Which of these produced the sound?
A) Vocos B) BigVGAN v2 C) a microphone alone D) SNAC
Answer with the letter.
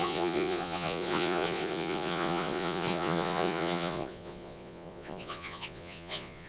A